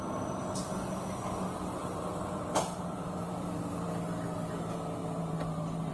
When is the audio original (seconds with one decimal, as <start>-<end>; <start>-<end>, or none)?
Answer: 0.0-1.8; 3.9-5.0